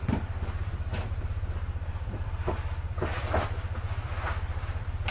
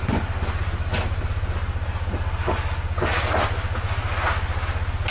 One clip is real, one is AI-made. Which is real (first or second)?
second